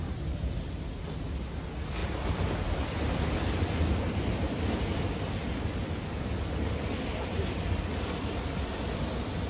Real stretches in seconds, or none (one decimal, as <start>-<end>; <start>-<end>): 0.0-9.5